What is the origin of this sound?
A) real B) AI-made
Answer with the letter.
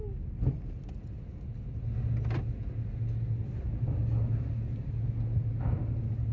A